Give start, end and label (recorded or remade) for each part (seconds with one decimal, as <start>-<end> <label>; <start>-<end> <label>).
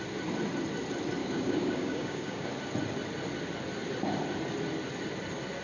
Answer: 0.0-1.2 recorded; 1.2-2.5 remade; 2.5-5.6 recorded